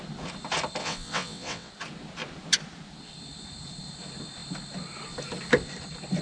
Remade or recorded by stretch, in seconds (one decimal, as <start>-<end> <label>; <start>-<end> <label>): 0.0-0.8 recorded; 0.8-1.7 remade; 1.7-6.2 recorded